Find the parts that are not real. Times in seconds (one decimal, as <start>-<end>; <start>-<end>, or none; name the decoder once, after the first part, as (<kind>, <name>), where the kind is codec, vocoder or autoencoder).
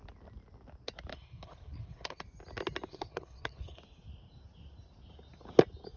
1.1-2.2 (codec, HILCodec); 2.9-3.8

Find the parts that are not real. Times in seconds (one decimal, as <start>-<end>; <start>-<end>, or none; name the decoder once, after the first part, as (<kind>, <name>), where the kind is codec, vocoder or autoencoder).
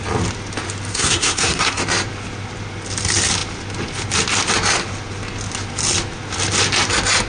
0.9-1.8 (codec, SNAC)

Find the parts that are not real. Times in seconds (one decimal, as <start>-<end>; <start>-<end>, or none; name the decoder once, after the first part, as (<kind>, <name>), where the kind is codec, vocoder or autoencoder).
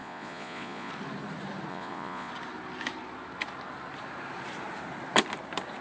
0.0-0.9 (vocoder, Vocos); 1.7-2.3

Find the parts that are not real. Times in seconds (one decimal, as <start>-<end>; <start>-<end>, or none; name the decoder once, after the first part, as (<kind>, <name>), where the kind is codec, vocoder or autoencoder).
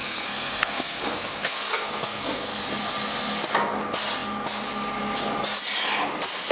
0.0-2.6 (codec, SNAC)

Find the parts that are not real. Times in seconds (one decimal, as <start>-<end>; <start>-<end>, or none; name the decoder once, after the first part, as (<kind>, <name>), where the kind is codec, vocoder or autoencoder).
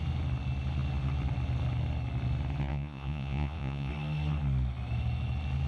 2.7-3.9 (vocoder, Vocos)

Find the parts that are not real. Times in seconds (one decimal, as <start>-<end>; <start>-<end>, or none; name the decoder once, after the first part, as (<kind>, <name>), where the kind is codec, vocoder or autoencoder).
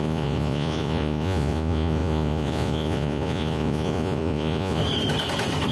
0.0-4.8 (vocoder, Vocos)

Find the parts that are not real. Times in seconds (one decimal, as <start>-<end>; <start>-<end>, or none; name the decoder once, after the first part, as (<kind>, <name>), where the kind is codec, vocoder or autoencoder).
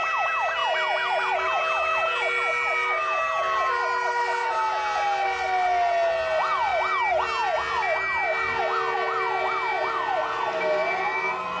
none